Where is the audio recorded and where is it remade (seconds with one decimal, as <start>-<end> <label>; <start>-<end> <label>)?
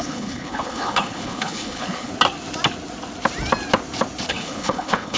0.0-2.1 remade; 2.1-4.3 recorded; 4.3-5.2 remade